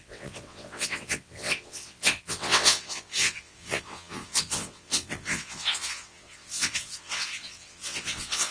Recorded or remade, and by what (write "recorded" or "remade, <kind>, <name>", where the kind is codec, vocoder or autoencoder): remade, vocoder, WaveNeXt